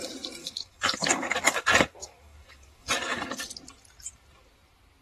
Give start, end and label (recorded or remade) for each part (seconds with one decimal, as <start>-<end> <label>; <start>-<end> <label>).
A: 0.0-0.4 recorded; 0.4-3.4 remade; 3.4-5.0 recorded